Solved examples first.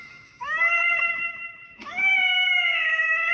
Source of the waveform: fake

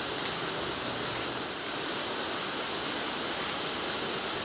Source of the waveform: real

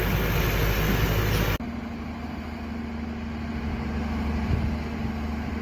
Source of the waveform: real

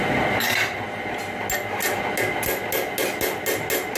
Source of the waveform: real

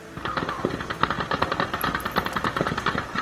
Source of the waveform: real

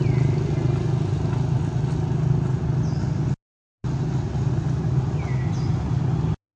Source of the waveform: real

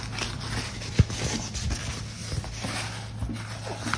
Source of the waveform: real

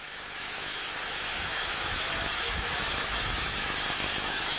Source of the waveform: fake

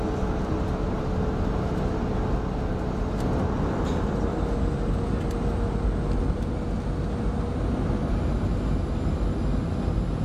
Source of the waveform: real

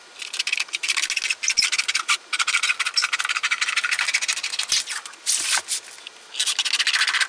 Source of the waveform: real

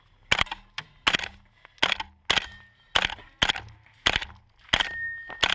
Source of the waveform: real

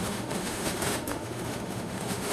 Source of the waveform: fake